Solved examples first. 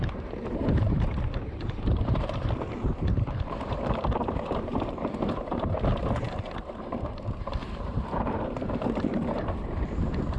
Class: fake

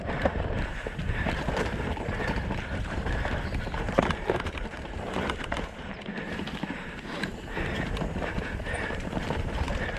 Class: fake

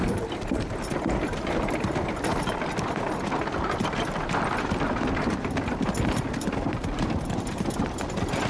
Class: fake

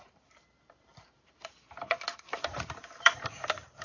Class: fake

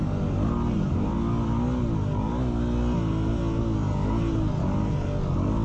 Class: real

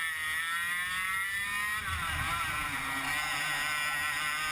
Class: real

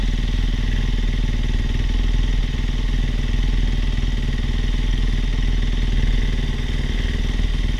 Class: real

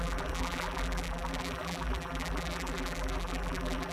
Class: fake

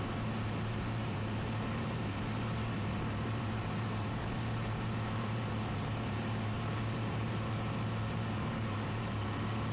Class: fake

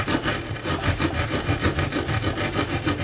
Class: real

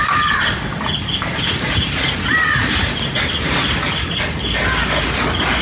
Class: real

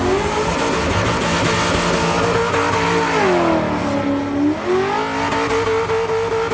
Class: real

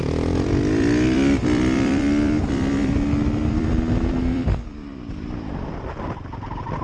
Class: fake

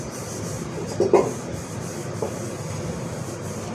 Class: fake